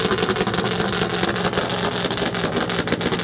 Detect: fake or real real